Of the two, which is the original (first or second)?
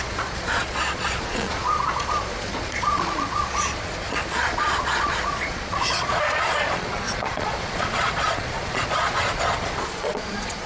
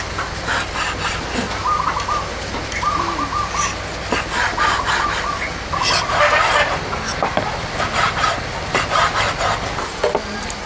second